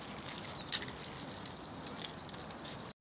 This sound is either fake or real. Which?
real